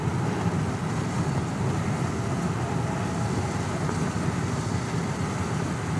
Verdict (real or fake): real